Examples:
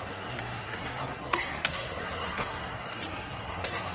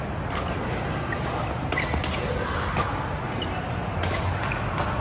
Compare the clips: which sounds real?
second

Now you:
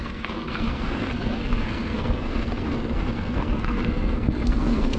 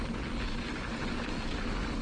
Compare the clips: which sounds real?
second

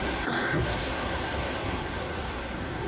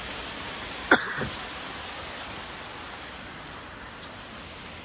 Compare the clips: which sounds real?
second